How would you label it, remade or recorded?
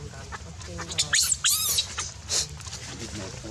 recorded